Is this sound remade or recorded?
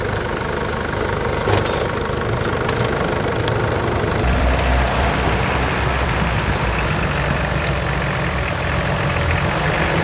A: remade